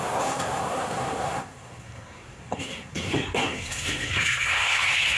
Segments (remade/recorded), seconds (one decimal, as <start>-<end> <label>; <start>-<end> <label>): 0.0-5.2 remade